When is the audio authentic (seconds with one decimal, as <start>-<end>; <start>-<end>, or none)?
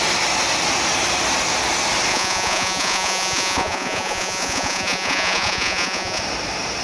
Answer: 0.0-2.1; 6.2-6.8